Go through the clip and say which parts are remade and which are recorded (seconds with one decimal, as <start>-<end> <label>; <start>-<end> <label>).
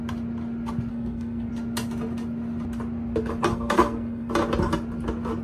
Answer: 0.0-0.9 recorded; 0.9-1.5 remade; 1.5-3.5 recorded; 3.5-4.3 remade; 4.3-5.4 recorded